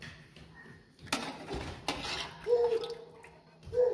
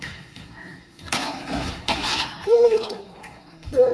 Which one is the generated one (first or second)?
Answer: second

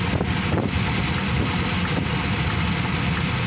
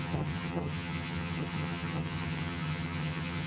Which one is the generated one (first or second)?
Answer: second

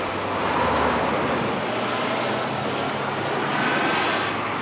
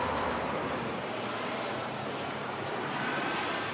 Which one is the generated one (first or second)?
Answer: second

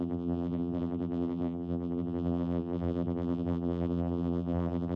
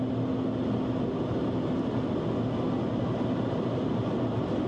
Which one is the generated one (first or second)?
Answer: first